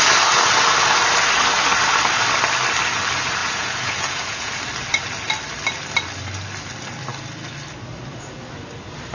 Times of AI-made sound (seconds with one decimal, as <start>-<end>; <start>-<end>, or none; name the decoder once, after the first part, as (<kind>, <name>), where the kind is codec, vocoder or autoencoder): 3.4-4.6 (vocoder, Vocos)